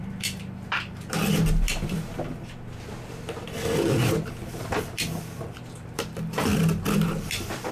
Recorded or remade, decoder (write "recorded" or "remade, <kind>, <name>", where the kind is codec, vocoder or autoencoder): remade, vocoder, BigVGAN v2